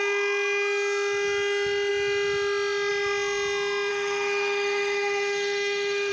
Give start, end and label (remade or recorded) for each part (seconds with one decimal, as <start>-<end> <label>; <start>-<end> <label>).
0.0-3.9 recorded; 3.9-6.1 remade